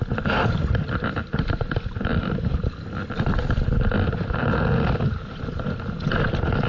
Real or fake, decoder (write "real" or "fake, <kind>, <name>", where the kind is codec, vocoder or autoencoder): real